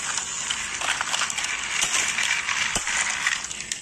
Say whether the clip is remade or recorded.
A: recorded